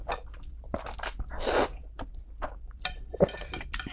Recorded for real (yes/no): no